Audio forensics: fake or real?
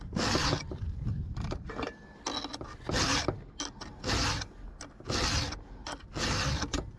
real